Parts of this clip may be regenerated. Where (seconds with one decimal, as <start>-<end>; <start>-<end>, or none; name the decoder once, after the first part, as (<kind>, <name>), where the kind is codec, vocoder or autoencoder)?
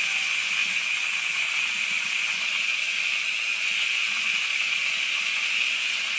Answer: 0.0-6.2 (vocoder, Vocos)